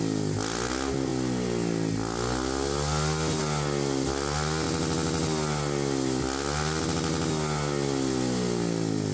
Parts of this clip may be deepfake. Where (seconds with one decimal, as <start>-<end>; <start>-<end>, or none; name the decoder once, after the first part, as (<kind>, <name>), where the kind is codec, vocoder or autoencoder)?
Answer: none